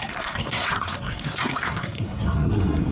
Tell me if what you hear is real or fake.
fake